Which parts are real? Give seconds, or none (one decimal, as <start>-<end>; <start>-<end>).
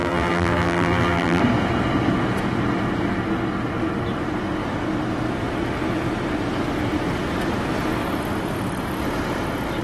1.4-9.8